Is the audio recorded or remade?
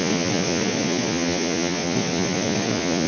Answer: remade